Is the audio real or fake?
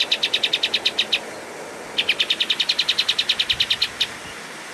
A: real